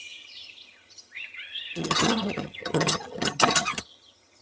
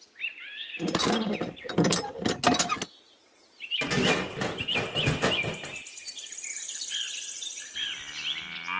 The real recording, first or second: second